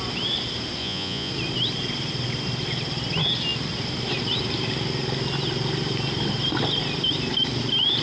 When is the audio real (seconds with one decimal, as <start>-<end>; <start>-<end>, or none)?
0.0-0.8; 1.3-8.0